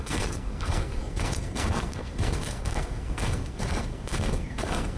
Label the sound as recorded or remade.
remade